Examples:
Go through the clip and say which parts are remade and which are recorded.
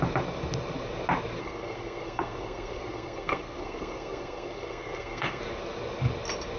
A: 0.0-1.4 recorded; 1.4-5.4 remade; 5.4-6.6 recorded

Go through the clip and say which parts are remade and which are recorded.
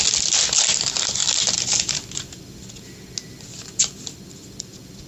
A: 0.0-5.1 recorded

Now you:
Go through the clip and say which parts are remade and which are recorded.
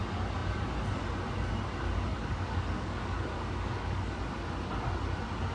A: 0.0-2.1 recorded; 2.1-4.2 remade; 4.2-5.5 recorded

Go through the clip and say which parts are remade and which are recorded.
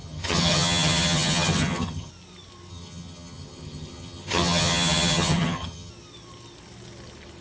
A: 0.0-2.1 remade; 2.1-2.7 recorded; 2.7-5.9 remade; 5.9-7.4 recorded